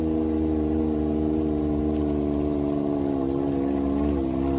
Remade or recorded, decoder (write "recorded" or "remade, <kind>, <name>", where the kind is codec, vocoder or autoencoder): recorded